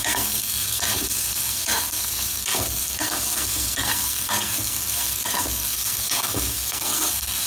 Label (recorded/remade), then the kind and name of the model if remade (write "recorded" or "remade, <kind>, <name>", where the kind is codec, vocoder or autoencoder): remade, codec, SNAC